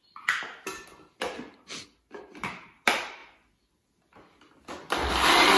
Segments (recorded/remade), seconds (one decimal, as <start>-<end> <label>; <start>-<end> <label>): 0.0-5.6 recorded